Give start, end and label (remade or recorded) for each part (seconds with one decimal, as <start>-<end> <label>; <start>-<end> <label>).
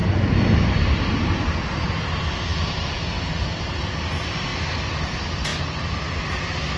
0.0-6.8 recorded